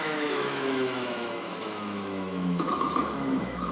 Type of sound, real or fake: fake